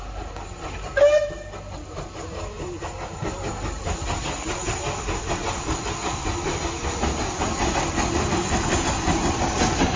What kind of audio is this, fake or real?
real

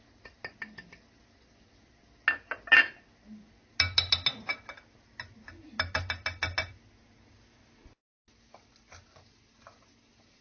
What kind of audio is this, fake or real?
real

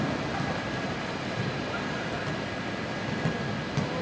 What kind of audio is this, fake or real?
real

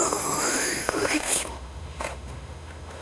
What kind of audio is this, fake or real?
fake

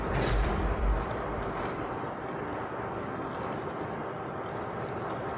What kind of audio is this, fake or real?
fake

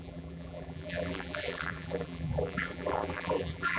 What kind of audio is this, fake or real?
fake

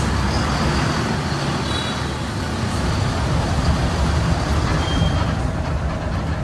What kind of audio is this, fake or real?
real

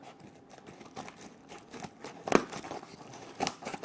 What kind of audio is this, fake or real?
real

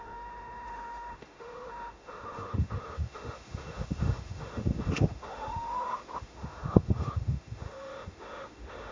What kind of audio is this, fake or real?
fake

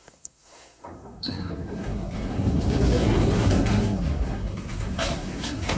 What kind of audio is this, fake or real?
fake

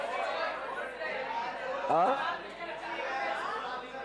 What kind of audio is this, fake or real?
real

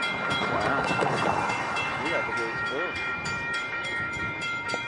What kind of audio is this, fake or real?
fake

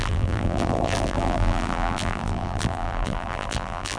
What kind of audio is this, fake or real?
fake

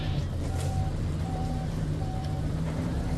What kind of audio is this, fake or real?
fake